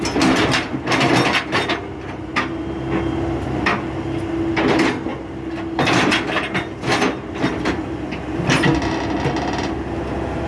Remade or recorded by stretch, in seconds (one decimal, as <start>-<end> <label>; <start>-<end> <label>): 0.0-10.5 recorded